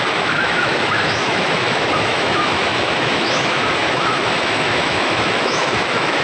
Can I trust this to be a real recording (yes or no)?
no